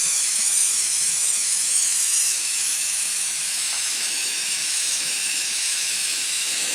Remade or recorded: remade